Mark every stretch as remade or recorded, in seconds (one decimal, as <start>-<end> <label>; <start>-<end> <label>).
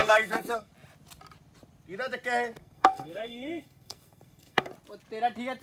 0.0-0.7 remade; 0.7-2.6 recorded; 2.6-4.7 remade; 4.7-5.6 recorded